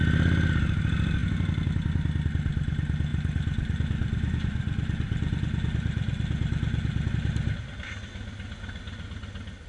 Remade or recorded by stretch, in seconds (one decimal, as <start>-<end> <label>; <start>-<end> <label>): 0.0-9.7 recorded